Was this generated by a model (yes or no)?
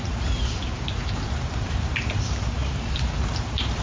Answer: yes